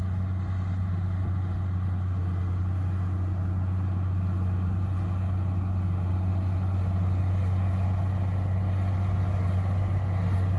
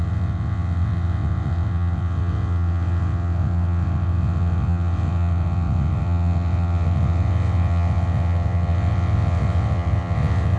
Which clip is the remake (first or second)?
second